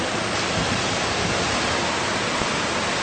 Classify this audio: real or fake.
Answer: real